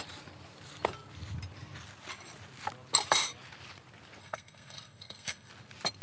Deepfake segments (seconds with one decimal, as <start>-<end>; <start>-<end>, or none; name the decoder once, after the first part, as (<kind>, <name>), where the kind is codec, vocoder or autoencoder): 4.2-5.5 (codec, SNAC)